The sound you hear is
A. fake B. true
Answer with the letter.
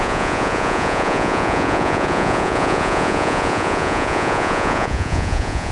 A